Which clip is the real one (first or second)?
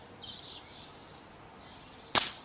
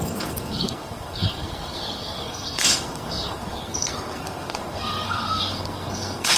first